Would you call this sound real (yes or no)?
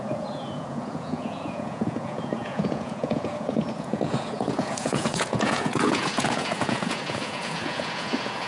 no